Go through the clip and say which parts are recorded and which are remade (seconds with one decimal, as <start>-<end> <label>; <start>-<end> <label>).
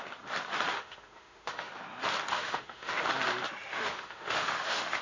0.0-0.7 recorded; 0.7-1.7 remade; 1.7-2.3 recorded; 2.3-3.1 remade; 3.1-3.7 recorded; 3.7-5.0 remade